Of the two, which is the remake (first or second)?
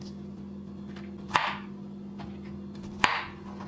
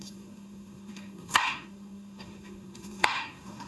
second